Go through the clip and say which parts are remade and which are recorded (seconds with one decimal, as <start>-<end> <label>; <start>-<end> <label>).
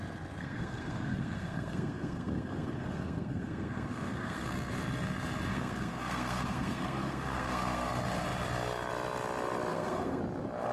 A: 0.0-0.4 recorded; 0.4-4.7 remade; 4.7-5.5 recorded; 5.5-7.9 remade; 7.9-9.7 recorded; 9.7-10.2 remade; 10.2-10.7 recorded